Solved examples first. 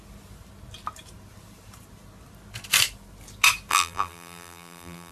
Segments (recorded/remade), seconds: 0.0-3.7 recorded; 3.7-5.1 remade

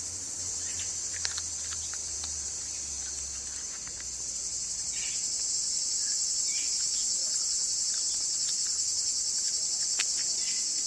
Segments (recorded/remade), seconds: 0.0-2.0 recorded; 2.0-5.5 remade; 5.5-7.2 recorded; 7.2-8.0 remade; 8.0-8.9 recorded; 8.9-9.5 remade; 9.5-10.9 recorded

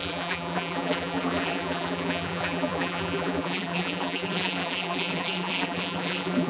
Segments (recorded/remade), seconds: 0.0-6.5 remade